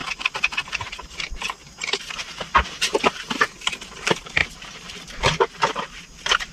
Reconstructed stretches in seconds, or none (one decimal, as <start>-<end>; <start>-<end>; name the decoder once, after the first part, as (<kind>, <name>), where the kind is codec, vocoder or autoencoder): 0.7-1.6 (vocoder, BigVGAN v2); 3.1-6.5